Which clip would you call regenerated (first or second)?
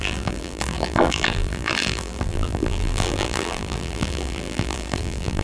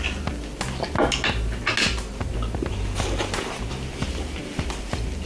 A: first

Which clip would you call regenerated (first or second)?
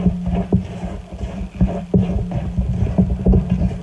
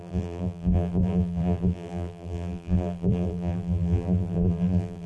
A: second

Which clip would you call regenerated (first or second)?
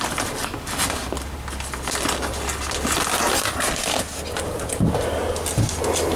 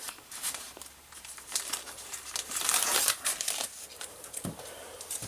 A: second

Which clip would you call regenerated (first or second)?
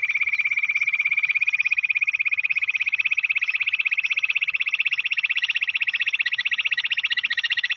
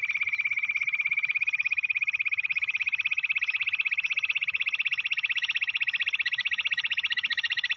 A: second